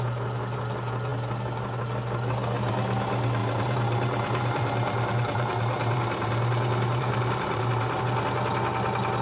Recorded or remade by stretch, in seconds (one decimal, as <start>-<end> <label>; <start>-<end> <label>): 0.0-3.4 recorded; 3.4-8.0 remade; 8.0-9.2 recorded